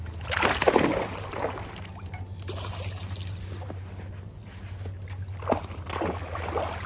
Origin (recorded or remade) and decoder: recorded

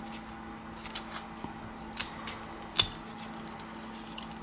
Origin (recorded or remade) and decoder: recorded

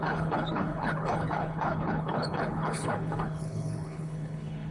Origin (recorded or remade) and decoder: remade, codec, HILCodec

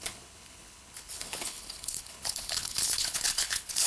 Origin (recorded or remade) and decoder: remade, codec, HILCodec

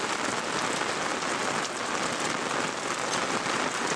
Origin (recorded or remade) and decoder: recorded